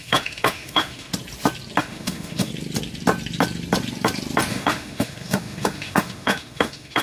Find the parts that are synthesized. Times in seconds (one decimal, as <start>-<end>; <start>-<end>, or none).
0.0-1.1; 1.8-2.5; 4.5-7.0